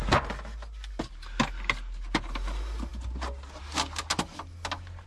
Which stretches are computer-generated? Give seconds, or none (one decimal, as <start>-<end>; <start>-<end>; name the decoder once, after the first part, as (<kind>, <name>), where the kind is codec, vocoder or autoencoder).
none